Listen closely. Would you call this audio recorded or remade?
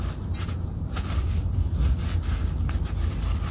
recorded